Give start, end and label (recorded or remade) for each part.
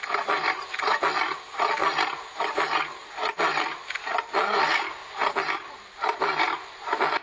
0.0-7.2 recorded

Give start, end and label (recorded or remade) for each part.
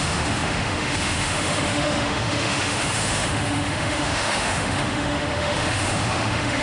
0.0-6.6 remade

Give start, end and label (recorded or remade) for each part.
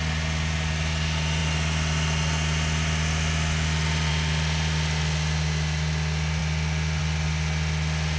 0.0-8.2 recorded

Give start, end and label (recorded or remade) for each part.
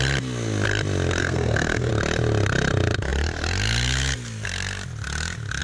0.0-1.2 recorded; 1.2-1.9 remade; 1.9-5.6 recorded